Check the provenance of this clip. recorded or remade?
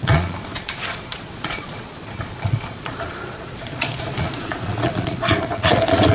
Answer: remade